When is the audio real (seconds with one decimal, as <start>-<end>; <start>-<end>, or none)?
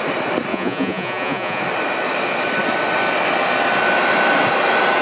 0.0-0.5; 1.6-5.0